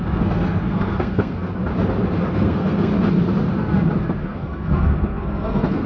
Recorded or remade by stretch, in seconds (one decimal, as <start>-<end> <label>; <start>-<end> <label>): 0.0-1.6 remade; 1.6-2.3 recorded; 2.3-2.9 remade; 2.9-4.2 recorded; 4.2-5.9 remade